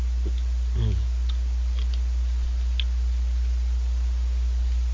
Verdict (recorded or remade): recorded